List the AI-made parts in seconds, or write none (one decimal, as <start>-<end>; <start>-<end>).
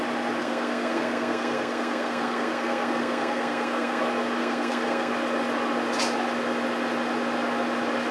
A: 0.4-4.0; 4.4-5.1